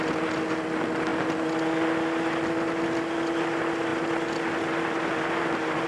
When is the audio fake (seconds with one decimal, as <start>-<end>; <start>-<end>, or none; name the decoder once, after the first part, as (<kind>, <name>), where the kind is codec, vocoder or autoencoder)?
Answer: none